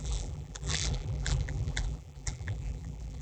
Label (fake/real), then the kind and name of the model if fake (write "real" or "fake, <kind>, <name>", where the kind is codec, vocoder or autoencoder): fake, vocoder, BigVGAN v2